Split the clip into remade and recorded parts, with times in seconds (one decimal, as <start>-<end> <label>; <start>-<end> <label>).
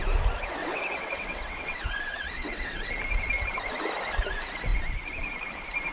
0.0-0.6 recorded; 0.6-2.9 remade; 2.9-5.9 recorded